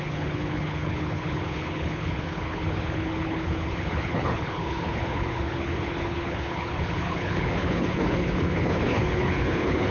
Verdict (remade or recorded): remade